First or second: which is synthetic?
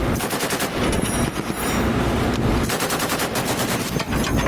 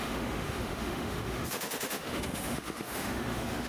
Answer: second